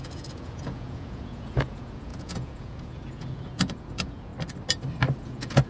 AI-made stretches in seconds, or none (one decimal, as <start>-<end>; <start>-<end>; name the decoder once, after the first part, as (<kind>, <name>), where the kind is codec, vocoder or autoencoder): 0.0-4.3 (vocoder, Vocos); 5.2-5.7